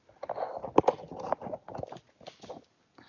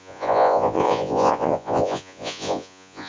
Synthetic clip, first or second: second